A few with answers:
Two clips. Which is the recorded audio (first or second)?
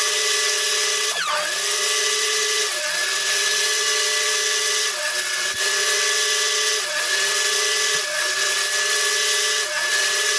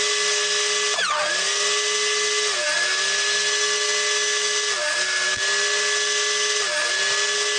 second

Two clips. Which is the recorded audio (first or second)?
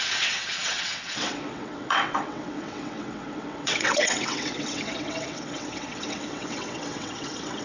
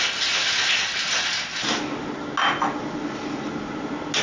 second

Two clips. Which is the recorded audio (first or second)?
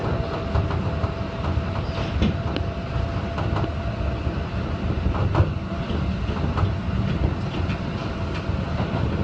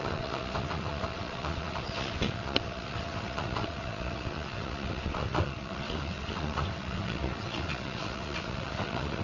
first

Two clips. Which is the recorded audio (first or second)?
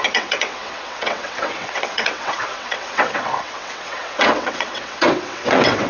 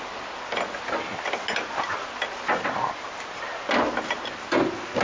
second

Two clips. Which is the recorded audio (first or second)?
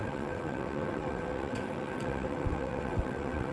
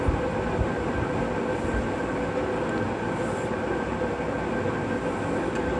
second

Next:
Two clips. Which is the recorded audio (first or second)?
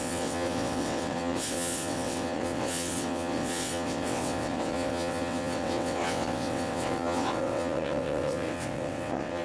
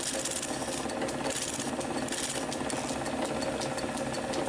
second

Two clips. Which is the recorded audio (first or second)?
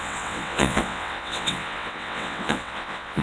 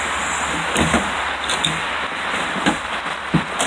second